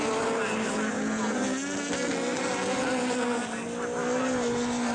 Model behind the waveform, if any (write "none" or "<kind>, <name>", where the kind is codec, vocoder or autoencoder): none